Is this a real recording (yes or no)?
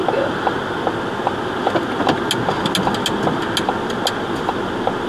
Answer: yes